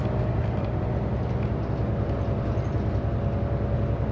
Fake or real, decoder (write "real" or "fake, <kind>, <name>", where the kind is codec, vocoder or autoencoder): real